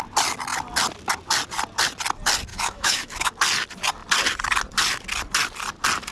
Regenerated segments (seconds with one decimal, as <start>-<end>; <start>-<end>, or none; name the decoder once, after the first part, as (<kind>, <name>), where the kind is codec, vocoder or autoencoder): 2.5-3.3 (autoencoder, DAC-VAE)